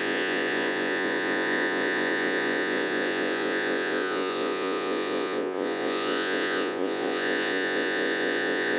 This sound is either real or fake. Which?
fake